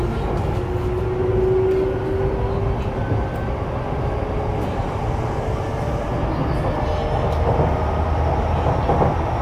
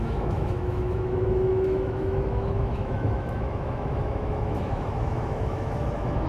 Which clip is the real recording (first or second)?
first